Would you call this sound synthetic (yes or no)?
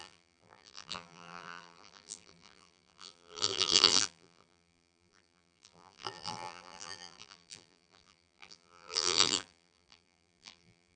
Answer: yes